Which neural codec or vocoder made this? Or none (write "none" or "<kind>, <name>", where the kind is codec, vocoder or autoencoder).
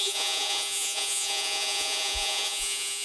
vocoder, Vocos